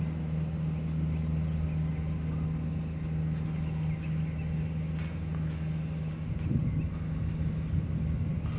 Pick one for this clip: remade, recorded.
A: recorded